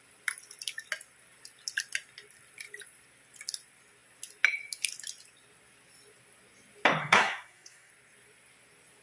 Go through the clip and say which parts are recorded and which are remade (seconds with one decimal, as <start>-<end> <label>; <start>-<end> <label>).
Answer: 0.0-7.0 recorded; 7.0-7.9 remade; 7.9-9.0 recorded

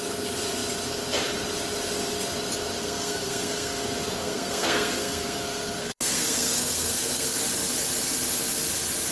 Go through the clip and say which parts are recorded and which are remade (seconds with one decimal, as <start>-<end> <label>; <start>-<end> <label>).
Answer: 0.0-2.8 recorded; 2.8-7.4 remade; 7.4-9.1 recorded

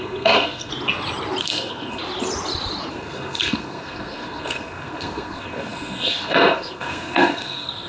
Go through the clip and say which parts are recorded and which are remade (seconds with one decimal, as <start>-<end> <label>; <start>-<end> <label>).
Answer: 0.0-0.7 remade; 0.7-1.4 recorded; 1.4-2.0 remade; 2.0-2.9 recorded; 2.9-7.9 remade

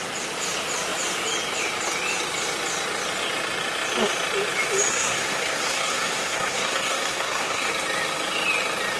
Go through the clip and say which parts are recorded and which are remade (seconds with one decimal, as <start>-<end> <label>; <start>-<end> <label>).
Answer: 0.0-4.9 recorded; 4.9-7.7 remade; 7.7-9.0 recorded

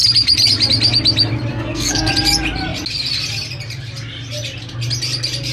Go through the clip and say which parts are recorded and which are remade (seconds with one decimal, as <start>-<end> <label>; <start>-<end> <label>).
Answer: 0.0-1.5 recorded; 1.5-2.1 remade; 2.1-5.5 recorded

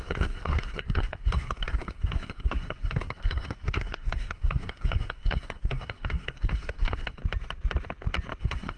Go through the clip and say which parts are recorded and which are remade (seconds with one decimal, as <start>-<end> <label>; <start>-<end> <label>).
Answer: 0.0-7.2 remade; 7.2-8.4 recorded; 8.4-8.8 remade